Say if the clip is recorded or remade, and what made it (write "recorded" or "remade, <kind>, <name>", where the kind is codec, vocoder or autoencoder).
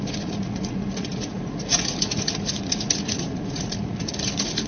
remade, vocoder, Vocos